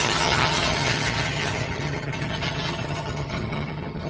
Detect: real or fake fake